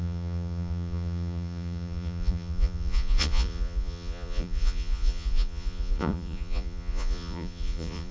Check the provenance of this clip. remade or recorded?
remade